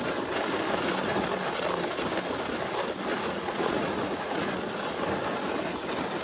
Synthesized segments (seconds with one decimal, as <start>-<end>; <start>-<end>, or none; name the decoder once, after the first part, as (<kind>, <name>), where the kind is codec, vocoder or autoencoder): 3.1-4.5 (vocoder, Vocos)